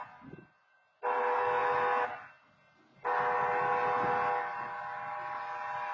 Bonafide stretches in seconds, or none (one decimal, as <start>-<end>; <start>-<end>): 0.0-5.9